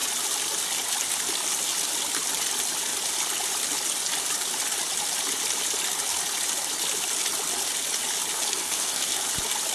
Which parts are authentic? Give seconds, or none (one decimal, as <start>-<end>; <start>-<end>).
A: 0.0-8.3; 9.2-9.7